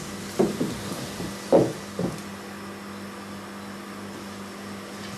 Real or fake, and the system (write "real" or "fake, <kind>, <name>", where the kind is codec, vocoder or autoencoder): real